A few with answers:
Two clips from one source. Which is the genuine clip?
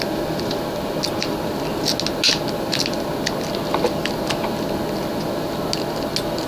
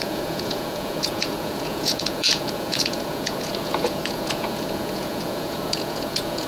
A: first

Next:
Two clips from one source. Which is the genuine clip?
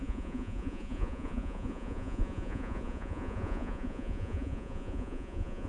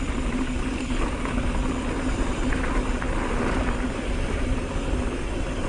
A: second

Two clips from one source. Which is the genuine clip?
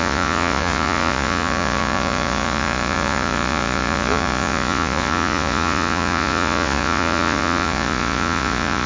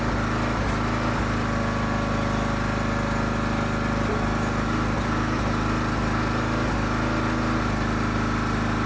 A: second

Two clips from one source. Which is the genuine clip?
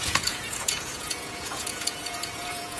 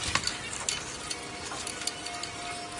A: second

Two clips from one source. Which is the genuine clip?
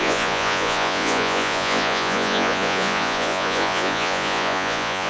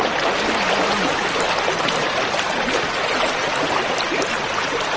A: second